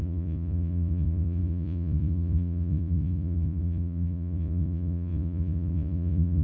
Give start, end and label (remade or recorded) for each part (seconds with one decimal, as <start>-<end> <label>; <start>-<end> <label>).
0.0-6.4 remade